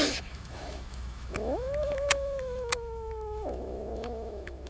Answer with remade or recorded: remade